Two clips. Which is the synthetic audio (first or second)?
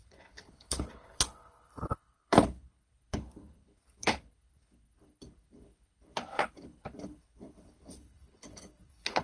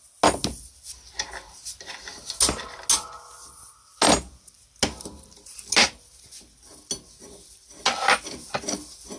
first